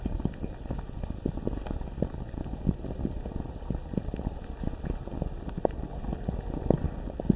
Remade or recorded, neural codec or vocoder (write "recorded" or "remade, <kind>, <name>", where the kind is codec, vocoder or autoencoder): recorded